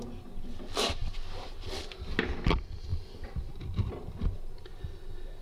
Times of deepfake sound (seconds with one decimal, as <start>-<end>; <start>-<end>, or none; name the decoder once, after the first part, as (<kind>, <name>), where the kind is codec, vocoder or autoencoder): 2.9-3.5 (vocoder, BigVGAN v2)